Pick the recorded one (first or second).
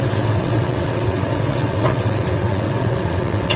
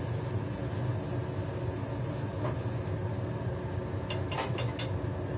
second